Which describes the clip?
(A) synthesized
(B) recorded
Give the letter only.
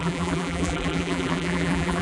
A